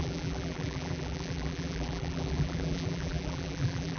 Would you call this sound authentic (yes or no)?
no